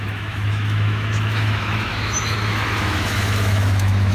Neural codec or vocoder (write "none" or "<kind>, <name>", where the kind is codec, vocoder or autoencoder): autoencoder, DAC-VAE